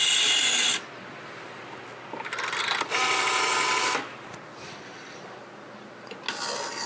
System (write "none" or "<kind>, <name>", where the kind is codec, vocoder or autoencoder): none